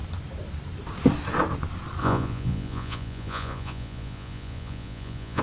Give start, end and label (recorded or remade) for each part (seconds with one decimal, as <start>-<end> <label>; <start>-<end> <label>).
0.0-2.0 recorded; 2.0-5.4 remade